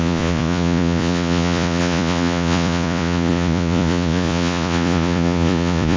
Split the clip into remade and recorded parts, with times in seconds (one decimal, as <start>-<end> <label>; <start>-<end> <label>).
0.0-6.0 remade